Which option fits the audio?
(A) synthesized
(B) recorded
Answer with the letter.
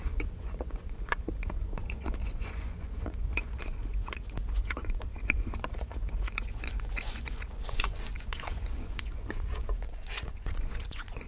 A